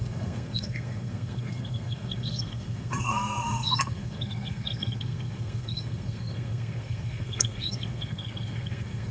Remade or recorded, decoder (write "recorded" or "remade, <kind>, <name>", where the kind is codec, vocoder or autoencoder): remade, codec, SNAC